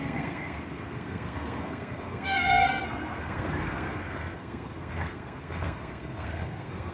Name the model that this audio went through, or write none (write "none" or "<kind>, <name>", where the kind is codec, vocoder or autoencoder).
codec, SNAC